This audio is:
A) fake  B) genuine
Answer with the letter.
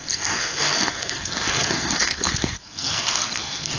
A